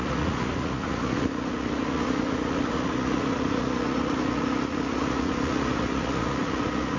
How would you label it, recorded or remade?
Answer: remade